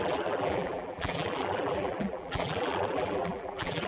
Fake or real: fake